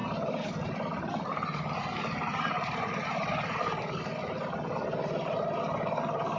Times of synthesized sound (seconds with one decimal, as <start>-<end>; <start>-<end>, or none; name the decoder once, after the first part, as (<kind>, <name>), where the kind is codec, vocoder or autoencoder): 0.0-1.8 (vocoder, BigVGAN v2); 2.3-3.9